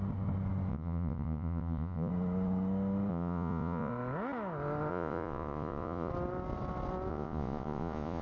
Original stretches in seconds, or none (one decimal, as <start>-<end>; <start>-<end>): 0.0-0.7; 2.1-3.1; 3.9-4.9; 6.1-7.1